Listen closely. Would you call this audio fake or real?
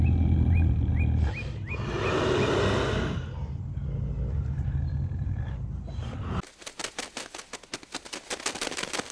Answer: real